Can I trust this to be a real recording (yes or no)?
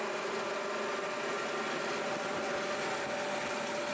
yes